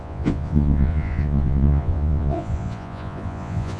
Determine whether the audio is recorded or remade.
remade